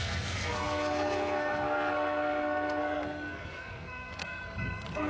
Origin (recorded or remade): remade